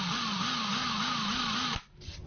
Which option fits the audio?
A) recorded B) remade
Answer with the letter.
A